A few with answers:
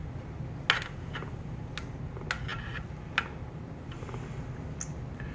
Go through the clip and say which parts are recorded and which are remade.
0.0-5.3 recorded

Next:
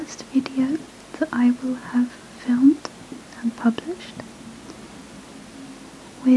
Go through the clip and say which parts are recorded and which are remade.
0.0-6.4 recorded

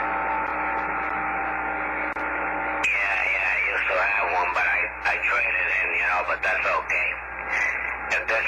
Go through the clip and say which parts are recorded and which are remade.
0.0-3.2 recorded; 3.2-6.1 remade; 6.1-8.5 recorded